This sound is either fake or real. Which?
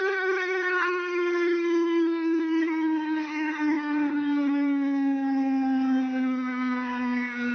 fake